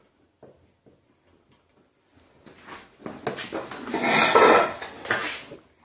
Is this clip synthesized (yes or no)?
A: no